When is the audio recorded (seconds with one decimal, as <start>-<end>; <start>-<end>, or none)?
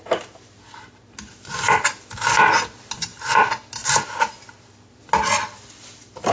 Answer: 0.0-6.3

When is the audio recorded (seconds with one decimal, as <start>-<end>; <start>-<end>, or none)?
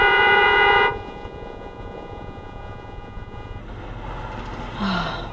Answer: 3.6-5.3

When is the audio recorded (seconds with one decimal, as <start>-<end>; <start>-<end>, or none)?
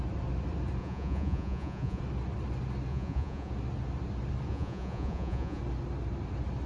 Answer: 0.0-0.8; 2.0-2.9; 3.5-4.5; 5.6-6.7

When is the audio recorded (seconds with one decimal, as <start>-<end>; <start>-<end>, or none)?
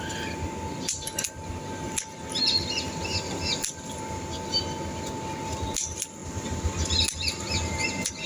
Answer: 0.0-8.3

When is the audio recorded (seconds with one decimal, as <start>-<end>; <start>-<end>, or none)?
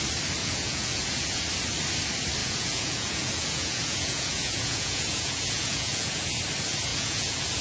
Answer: 0.0-0.4; 1.4-2.4; 6.4-6.9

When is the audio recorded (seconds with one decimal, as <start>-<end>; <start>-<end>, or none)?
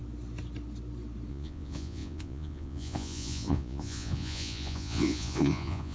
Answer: 0.0-1.3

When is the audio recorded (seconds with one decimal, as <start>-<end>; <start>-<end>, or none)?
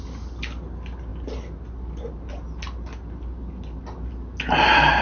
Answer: 0.0-5.0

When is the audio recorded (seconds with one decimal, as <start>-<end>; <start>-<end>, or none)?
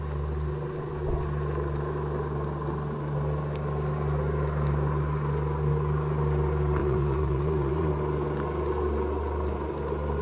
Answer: 0.0-6.8; 7.9-10.2